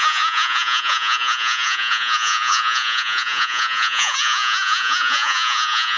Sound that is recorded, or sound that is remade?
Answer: remade